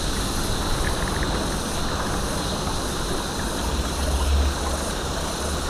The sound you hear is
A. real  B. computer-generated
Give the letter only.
A